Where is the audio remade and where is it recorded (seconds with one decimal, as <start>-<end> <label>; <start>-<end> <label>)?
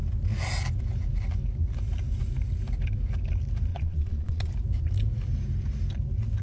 0.0-3.7 recorded; 3.7-4.5 remade; 4.5-6.4 recorded